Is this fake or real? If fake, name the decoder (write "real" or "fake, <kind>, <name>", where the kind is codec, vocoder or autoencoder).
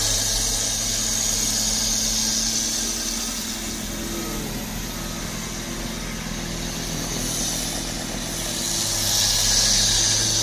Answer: real